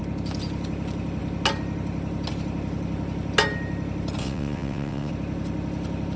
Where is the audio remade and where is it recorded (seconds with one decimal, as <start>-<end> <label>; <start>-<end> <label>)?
0.0-4.2 recorded; 4.2-5.1 remade; 5.1-6.2 recorded